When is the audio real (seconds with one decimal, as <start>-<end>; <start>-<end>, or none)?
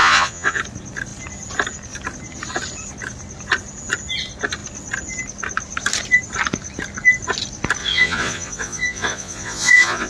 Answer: 0.6-7.8